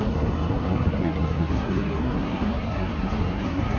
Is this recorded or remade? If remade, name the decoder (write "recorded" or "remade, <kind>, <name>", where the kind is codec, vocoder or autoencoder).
remade, codec, SNAC